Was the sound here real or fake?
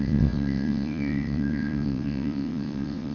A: fake